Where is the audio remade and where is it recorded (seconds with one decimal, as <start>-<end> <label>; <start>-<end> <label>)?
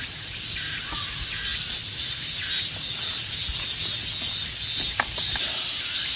0.0-6.2 recorded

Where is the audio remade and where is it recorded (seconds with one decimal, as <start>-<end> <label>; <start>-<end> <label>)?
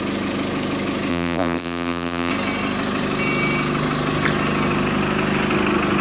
0.0-1.1 recorded; 1.1-2.3 remade; 2.3-6.0 recorded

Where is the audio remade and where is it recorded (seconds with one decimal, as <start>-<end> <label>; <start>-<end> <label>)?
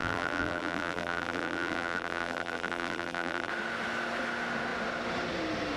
0.0-3.5 remade; 3.5-5.8 recorded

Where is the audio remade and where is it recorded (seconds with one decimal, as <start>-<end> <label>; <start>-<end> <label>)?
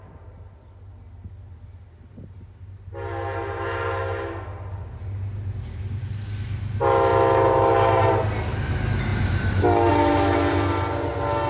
0.0-11.5 recorded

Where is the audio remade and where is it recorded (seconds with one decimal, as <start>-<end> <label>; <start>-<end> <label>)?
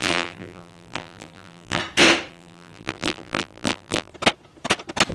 0.0-1.8 remade; 1.8-2.3 recorded; 2.3-4.1 remade; 4.1-5.1 recorded